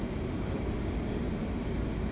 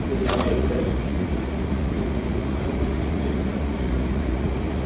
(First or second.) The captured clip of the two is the first